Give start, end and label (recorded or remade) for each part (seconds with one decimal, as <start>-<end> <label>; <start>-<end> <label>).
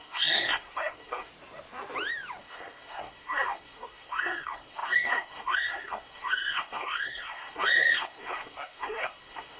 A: 0.0-1.3 remade; 1.3-2.4 recorded; 2.4-9.6 remade